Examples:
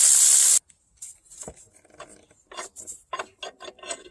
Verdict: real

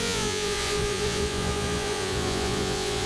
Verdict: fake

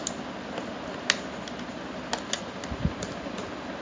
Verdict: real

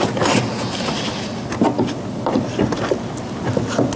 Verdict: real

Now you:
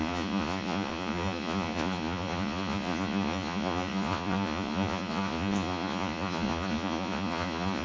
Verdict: fake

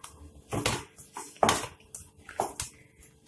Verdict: real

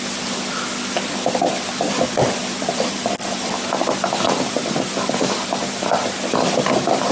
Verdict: real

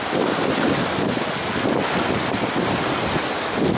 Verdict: real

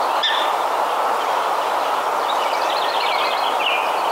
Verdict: real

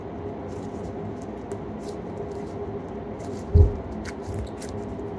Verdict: real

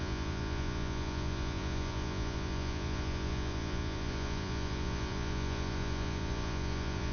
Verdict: fake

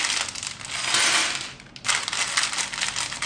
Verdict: real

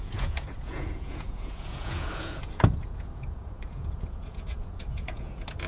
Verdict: fake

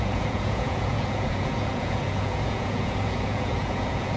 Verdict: fake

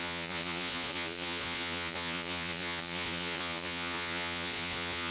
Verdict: fake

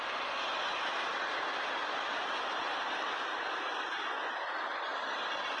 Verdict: real